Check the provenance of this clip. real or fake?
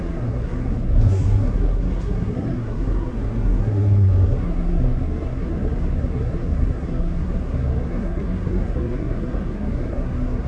fake